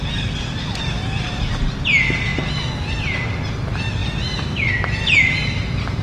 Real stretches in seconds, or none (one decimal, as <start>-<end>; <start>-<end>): 0.0-6.0